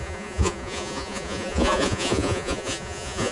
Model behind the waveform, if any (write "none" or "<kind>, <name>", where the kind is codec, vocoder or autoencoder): vocoder, Vocos